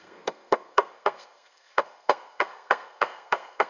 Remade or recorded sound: remade